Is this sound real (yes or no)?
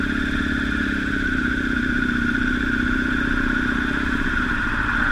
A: no